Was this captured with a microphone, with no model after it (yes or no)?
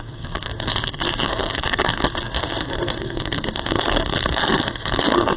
no